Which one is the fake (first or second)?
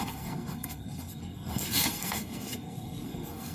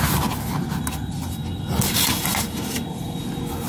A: first